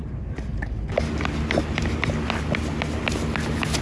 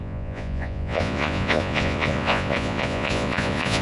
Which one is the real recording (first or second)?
first